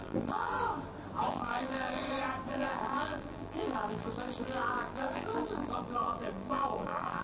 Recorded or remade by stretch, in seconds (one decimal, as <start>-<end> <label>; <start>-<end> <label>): 0.0-0.5 remade; 0.5-1.3 recorded; 1.3-2.0 remade; 2.0-2.5 recorded; 2.5-7.2 remade

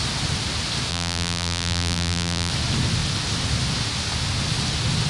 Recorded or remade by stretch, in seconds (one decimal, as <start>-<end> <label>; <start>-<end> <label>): 0.0-0.9 recorded; 0.9-2.5 remade; 2.5-5.1 recorded